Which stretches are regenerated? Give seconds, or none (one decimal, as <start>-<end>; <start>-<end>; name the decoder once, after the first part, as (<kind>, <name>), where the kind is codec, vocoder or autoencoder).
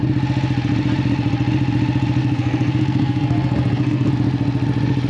2.2-4.1 (codec, SNAC)